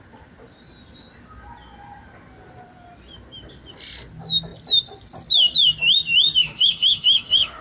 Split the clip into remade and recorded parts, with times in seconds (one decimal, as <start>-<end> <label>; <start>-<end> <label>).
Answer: 0.0-6.4 recorded; 6.4-7.6 remade